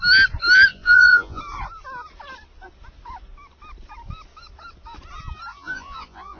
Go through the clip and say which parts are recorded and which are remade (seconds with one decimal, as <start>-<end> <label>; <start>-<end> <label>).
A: 0.0-0.7 recorded; 0.7-1.4 remade; 1.4-5.5 recorded; 5.5-6.4 remade